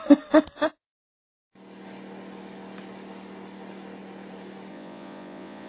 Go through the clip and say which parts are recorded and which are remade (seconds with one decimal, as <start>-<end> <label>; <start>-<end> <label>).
0.0-4.7 recorded; 4.7-5.7 remade